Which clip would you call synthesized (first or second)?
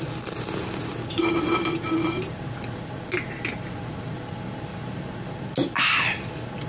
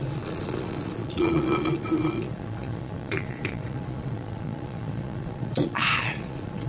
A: second